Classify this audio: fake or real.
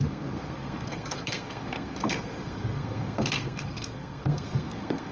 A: fake